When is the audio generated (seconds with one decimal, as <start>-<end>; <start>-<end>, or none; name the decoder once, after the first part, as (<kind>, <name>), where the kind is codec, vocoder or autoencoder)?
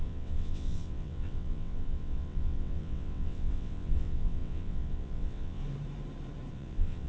0.0-5.6 (vocoder, WaveNeXt); 6.5-7.1